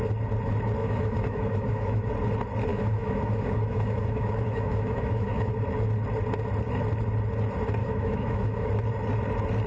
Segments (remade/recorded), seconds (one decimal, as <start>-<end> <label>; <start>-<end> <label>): 0.0-0.8 recorded; 0.8-2.1 remade; 2.1-2.7 recorded; 2.7-5.5 remade; 5.5-7.8 recorded; 7.8-8.7 remade; 8.7-9.7 recorded